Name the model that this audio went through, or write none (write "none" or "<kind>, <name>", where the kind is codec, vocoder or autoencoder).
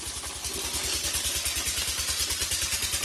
none